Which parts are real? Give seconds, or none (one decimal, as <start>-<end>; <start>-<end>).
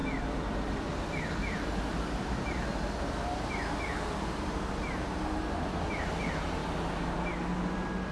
0.0-8.1